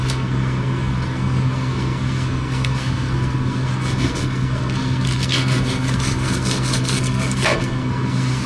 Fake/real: fake